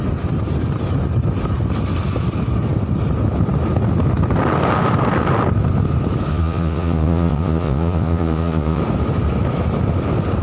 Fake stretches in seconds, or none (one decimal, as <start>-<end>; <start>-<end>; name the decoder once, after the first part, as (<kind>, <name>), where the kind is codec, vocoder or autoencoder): 6.3-8.8 (vocoder, Vocos)